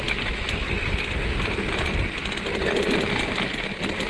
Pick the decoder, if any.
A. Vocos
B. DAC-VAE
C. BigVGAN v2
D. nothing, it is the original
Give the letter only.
D